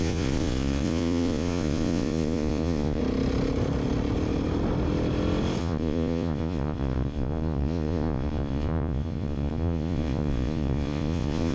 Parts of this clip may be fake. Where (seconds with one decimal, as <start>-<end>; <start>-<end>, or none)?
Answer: 0.0-3.0; 5.6-11.5